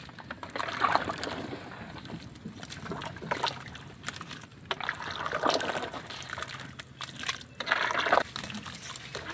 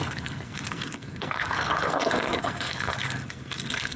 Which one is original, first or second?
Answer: first